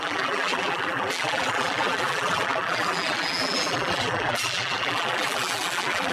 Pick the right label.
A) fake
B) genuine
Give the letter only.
A